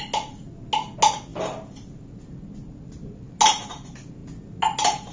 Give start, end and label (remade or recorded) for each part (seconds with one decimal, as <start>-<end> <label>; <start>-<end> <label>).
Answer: 0.0-5.1 recorded